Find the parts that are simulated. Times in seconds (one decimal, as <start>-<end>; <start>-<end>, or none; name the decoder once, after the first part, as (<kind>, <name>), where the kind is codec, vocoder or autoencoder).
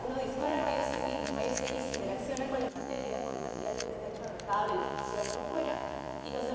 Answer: 0.4-2.0 (vocoder, Vocos); 2.8-3.9; 4.8-6.5